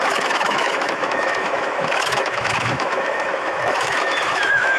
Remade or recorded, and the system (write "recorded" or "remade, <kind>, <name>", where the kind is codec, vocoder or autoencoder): remade, autoencoder, DAC-VAE